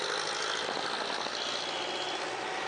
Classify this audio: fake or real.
real